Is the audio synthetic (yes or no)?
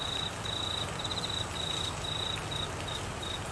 no